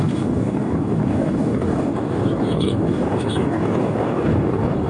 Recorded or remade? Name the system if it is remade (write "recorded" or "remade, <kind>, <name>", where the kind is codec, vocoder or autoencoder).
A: remade, codec, DAC